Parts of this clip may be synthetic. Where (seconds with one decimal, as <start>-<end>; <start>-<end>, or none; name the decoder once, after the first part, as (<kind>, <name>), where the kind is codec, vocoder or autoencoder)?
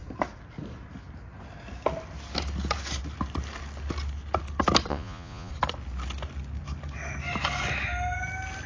4.9-5.5 (vocoder, Vocos)